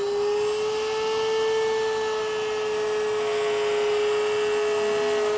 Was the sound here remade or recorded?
recorded